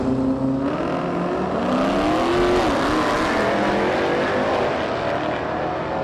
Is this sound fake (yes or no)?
no